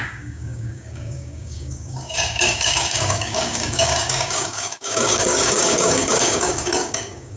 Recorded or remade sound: remade